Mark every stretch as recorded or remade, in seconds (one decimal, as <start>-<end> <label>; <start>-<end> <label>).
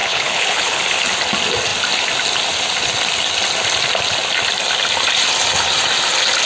0.0-0.8 remade; 0.8-6.5 recorded